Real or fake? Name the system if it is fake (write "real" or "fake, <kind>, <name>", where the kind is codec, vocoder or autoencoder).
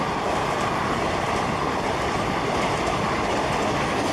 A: real